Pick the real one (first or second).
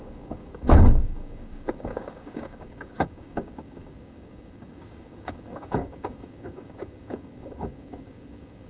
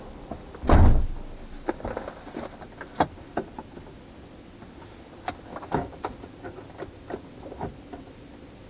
second